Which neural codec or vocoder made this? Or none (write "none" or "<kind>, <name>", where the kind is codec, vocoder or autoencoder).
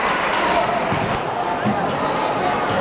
none